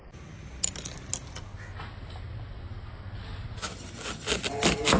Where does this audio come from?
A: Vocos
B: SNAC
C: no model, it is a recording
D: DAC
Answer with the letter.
C